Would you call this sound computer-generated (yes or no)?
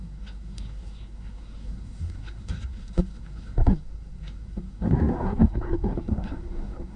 yes